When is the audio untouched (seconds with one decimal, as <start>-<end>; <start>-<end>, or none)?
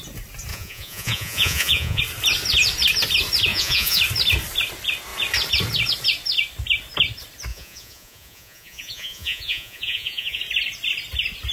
0.0-0.5; 2.0-3.5; 4.0-7.5; 10.4-11.5